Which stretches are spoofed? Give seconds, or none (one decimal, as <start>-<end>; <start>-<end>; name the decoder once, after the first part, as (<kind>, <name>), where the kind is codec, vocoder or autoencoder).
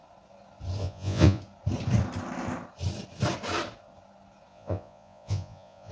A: 0.8-1.4 (vocoder, Vocos); 4.5-5.9